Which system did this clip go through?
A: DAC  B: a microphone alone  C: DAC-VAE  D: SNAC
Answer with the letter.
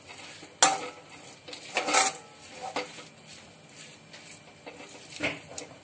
B